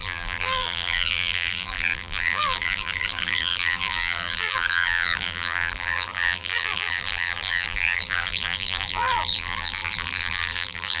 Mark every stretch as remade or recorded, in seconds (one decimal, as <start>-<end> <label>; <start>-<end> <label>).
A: 0.0-11.0 remade

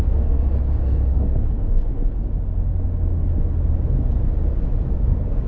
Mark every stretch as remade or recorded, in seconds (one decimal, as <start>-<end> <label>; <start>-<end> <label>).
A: 0.0-1.9 remade; 1.9-4.9 recorded; 4.9-5.5 remade

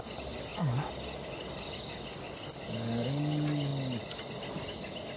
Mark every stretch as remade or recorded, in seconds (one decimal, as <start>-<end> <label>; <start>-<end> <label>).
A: 0.0-5.2 recorded

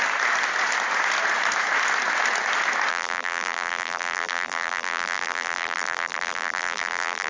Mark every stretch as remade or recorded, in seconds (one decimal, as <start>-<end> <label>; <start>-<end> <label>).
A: 0.0-2.9 recorded; 2.9-7.3 remade